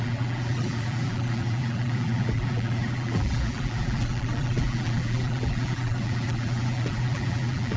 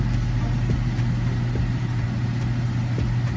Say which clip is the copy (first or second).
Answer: first